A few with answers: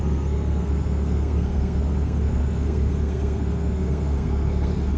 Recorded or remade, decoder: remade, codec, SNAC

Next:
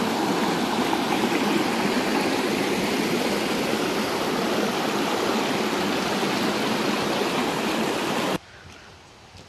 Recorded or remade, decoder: recorded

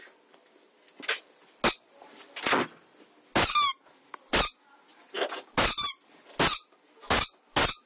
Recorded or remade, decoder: recorded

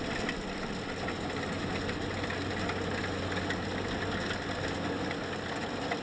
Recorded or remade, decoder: recorded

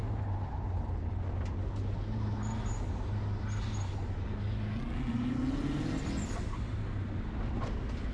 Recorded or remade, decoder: recorded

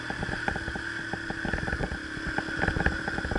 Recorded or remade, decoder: recorded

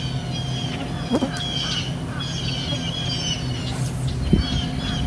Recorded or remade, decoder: recorded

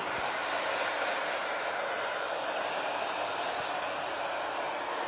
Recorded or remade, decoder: recorded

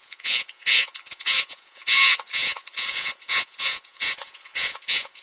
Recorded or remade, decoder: remade, vocoder, Vocos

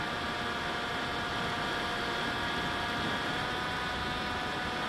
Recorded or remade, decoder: recorded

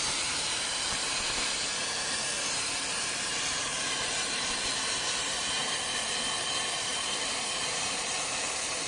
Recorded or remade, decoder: remade, vocoder, BigVGAN v2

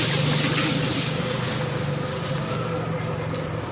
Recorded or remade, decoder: recorded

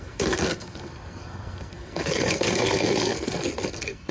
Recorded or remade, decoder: remade, codec, SNAC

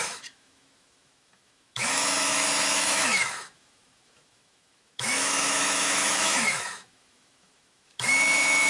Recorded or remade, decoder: remade, autoencoder, DAC-VAE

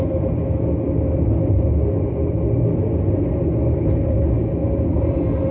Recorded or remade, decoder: recorded